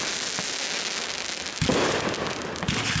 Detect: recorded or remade recorded